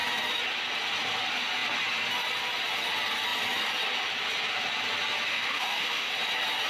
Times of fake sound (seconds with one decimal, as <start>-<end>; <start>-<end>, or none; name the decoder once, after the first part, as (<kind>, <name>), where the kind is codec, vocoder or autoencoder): 5.3-6.1 (autoencoder, DAC-VAE)